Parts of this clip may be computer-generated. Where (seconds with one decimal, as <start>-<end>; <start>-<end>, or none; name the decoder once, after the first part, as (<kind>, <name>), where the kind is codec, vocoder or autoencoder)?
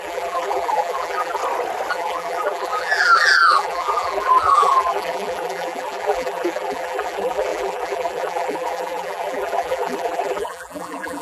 0.0-1.4 (vocoder, BigVGAN v2); 1.9-11.2